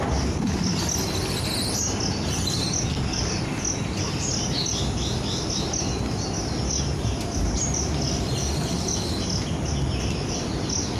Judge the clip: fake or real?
real